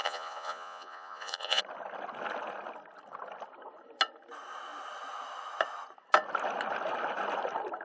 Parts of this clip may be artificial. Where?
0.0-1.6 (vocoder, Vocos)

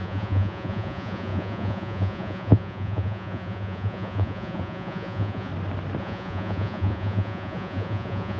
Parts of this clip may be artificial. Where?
0.0-5.5 (vocoder, Vocos); 6.0-8.4

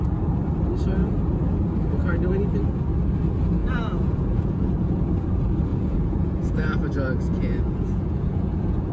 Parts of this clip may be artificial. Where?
3.6-4.7 (vocoder, Vocos); 5.7-8.9

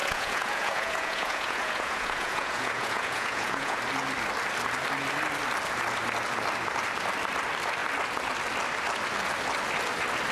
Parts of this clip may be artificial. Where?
0.0-3.8 (vocoder, Vocos)

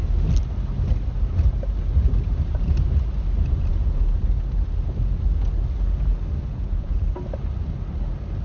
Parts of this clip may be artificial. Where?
3.7-4.2 (vocoder, Vocos); 6.5-7.2

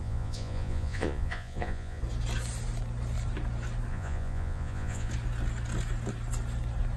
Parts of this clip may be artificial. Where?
0.0-2.0 (vocoder, Vocos); 3.9-5.1

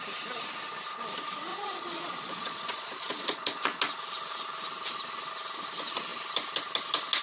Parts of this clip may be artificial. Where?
1.5-3.8 (vocoder, Vocos)